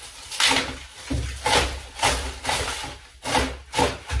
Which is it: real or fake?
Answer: real